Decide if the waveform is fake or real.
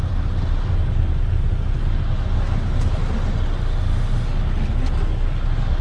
real